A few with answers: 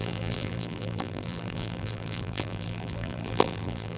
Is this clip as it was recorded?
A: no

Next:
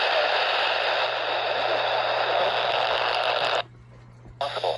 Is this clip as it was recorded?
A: yes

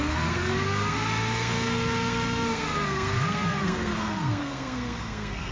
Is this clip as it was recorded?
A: no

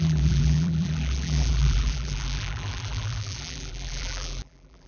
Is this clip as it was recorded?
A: no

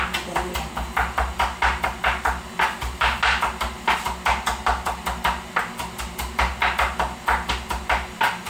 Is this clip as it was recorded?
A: yes